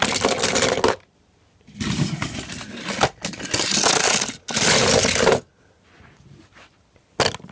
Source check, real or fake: real